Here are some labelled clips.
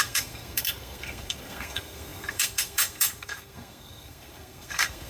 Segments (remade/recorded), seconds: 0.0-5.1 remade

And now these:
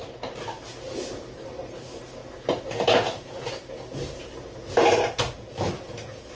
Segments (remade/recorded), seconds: 0.0-6.3 recorded